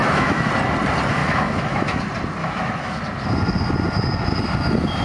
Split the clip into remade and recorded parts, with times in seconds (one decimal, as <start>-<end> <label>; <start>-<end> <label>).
0.0-0.5 remade; 0.5-1.2 recorded; 1.2-2.0 remade; 2.0-2.4 recorded; 2.4-3.0 remade; 3.0-5.0 recorded

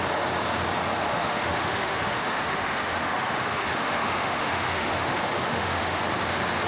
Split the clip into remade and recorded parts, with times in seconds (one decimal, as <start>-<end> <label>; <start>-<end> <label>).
0.0-1.1 recorded; 1.1-5.1 remade; 5.1-5.5 recorded; 5.5-6.0 remade; 6.0-6.7 recorded

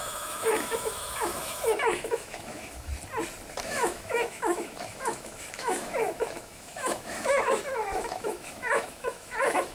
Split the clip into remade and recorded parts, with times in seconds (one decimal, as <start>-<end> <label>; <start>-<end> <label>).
0.0-2.9 remade; 2.9-3.6 recorded; 3.6-9.7 remade

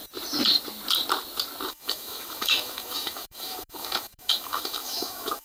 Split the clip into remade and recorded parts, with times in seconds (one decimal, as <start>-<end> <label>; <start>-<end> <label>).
0.0-1.7 recorded; 1.7-5.4 remade

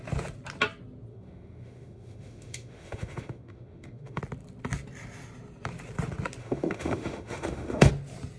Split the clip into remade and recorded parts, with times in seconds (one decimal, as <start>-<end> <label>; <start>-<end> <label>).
0.0-1.1 recorded; 1.1-4.2 remade; 4.2-6.4 recorded; 6.4-7.9 remade; 7.9-8.4 recorded